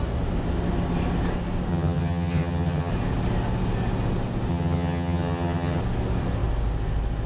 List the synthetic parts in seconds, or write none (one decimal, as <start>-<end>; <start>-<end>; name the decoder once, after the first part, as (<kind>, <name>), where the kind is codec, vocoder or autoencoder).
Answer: 1.7-2.9 (vocoder, HiFi-GAN); 4.5-5.8